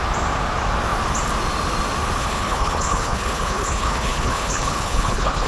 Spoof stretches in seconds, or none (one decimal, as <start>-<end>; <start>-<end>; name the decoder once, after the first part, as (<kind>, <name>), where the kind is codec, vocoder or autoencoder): 2.2-5.5 (codec, HILCodec)